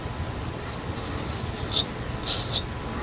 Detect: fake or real real